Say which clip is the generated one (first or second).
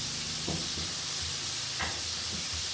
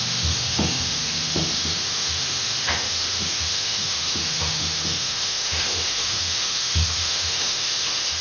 second